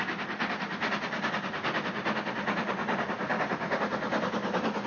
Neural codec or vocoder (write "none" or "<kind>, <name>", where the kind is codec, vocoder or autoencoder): none